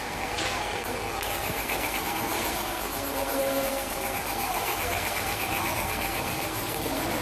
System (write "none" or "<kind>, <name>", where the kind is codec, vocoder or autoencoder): codec, SNAC